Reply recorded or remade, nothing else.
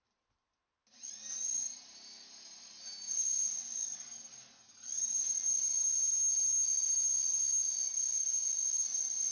recorded